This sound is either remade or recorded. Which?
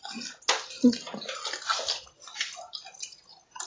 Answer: recorded